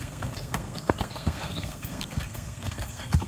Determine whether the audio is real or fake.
fake